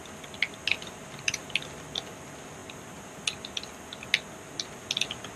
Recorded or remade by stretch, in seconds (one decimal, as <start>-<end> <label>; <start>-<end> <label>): 0.0-0.7 recorded; 0.7-1.4 remade; 1.4-5.4 recorded